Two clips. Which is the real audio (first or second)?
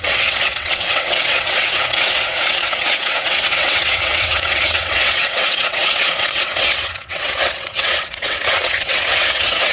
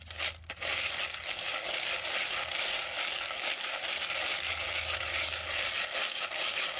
second